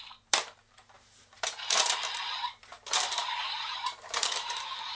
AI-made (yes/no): yes